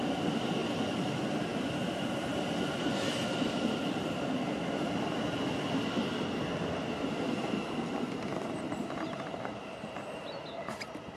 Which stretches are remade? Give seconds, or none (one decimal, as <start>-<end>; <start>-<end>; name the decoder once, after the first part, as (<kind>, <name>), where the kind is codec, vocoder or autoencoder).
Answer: none